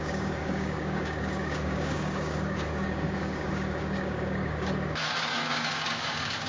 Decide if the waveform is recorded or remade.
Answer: remade